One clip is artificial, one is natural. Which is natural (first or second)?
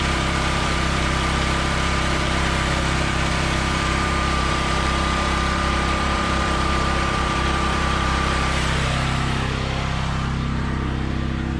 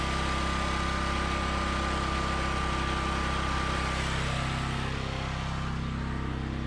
second